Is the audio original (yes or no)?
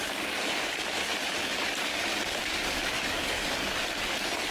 no